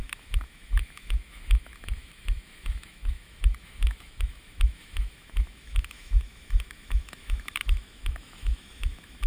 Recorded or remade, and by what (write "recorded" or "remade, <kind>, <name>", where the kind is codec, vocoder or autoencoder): remade, autoencoder, DAC-VAE